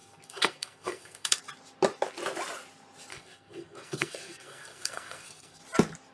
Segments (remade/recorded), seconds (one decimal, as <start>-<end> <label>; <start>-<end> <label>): 0.0-1.4 remade; 1.4-3.1 recorded; 3.1-5.6 remade; 5.6-6.1 recorded